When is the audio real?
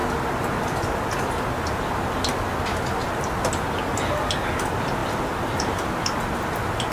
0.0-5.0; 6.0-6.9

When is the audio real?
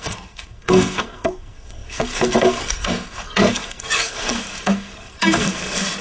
none